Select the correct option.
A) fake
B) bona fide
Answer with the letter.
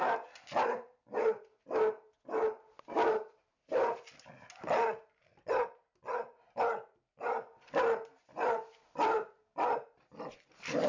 B